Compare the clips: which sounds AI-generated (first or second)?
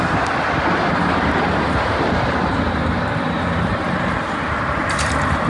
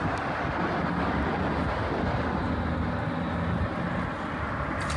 first